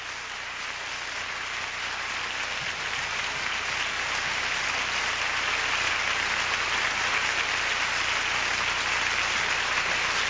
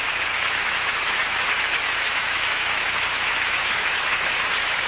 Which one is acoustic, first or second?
first